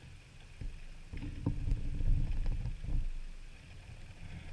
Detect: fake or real real